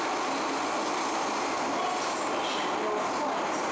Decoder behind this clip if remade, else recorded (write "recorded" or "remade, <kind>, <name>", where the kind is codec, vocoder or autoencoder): recorded